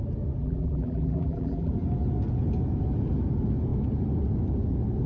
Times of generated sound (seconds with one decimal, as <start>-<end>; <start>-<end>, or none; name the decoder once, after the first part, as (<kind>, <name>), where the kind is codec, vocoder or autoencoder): 0.4-1.7 (vocoder, BigVGAN v2)